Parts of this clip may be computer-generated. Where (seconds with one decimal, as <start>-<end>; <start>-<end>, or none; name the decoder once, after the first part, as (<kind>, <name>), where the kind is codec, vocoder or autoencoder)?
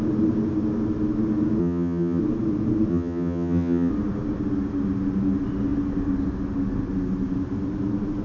1.6-2.2 (vocoder, HiFi-GAN); 2.9-3.9